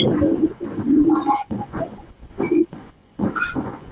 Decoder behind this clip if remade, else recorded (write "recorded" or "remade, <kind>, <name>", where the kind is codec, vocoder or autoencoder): remade, vocoder, Vocos